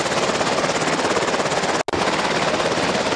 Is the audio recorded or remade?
recorded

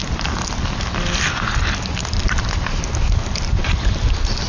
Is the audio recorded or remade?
recorded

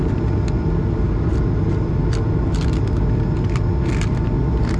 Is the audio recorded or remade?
recorded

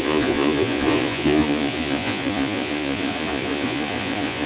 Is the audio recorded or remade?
remade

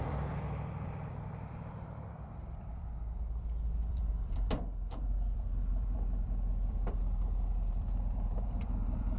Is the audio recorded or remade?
remade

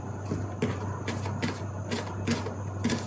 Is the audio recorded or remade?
recorded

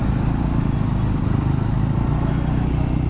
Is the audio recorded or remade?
recorded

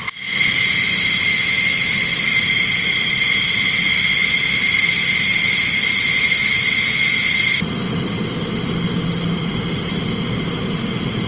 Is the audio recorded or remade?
recorded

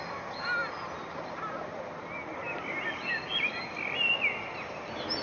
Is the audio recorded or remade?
recorded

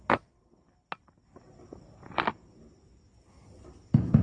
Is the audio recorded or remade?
recorded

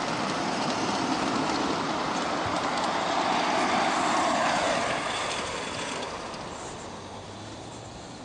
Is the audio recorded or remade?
recorded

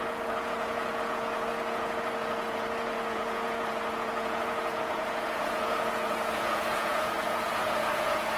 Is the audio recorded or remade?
remade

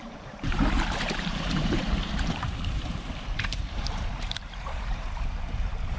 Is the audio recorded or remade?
remade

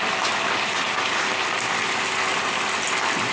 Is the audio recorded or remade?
recorded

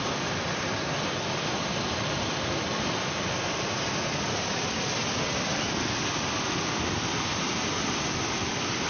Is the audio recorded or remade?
recorded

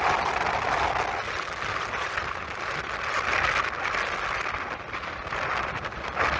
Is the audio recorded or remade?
recorded